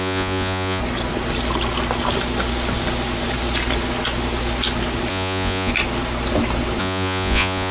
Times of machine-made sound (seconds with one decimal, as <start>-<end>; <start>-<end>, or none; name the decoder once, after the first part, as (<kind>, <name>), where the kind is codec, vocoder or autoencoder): 0.0-0.8 (vocoder, Vocos); 5.1-5.7; 6.8-7.7